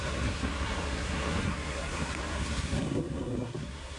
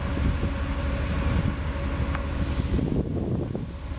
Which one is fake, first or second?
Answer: first